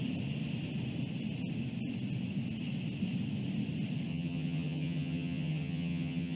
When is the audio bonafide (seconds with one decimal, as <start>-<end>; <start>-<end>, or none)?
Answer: 0.0-4.1